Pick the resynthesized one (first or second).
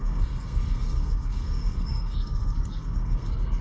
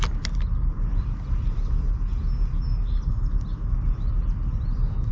first